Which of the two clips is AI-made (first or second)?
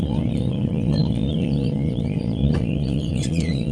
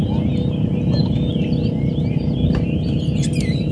first